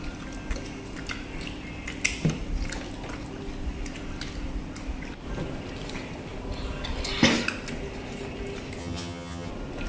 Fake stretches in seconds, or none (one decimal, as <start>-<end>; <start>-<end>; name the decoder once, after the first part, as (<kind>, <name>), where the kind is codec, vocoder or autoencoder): 8.8-9.5 (vocoder, HiFi-GAN)